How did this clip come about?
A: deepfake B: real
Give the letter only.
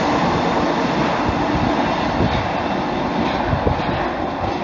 B